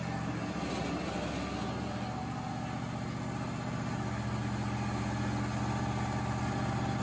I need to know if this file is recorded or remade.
recorded